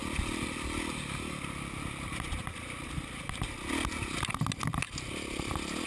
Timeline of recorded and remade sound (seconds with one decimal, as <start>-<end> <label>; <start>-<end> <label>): 0.0-3.5 remade; 3.5-5.9 recorded